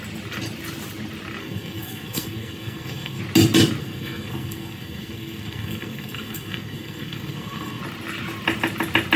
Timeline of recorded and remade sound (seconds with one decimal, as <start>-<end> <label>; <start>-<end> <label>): 0.0-1.4 recorded; 1.4-3.2 remade; 3.2-3.8 recorded; 3.8-7.8 remade; 7.8-9.2 recorded